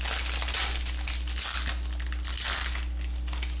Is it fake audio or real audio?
real